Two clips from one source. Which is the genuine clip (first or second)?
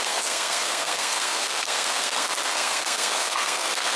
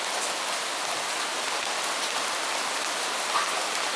second